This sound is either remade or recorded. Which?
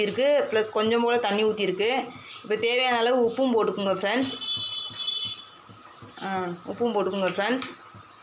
recorded